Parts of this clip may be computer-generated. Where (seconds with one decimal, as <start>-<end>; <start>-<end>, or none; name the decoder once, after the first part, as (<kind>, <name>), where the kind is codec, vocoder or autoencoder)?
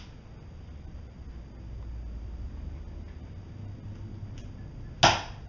none